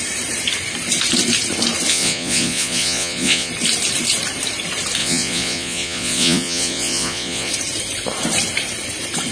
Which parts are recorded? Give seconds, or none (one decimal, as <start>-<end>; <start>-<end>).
0.0-1.9; 3.5-5.0; 7.5-9.3